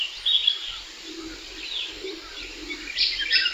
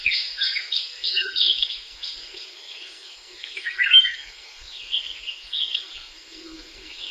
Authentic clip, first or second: first